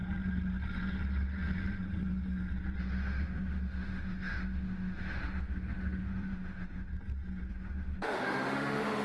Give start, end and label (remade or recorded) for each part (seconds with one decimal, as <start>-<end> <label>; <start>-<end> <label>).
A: 0.0-2.8 recorded; 2.8-6.9 remade; 6.9-7.5 recorded; 7.5-9.0 remade